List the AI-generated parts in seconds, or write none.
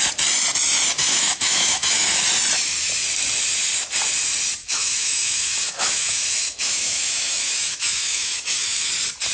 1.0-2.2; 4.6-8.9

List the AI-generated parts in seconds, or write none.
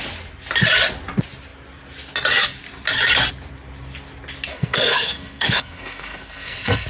4.5-6.9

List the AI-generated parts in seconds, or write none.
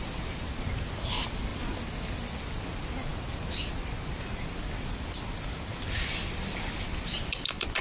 none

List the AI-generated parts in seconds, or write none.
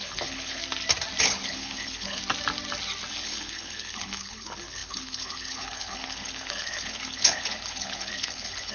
0.0-0.6; 1.2-2.2; 3.1-8.7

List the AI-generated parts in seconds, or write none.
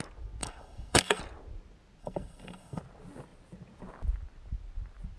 0.4-1.2; 2.0-2.8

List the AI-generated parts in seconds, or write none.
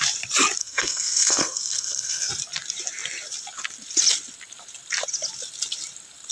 0.6-2.3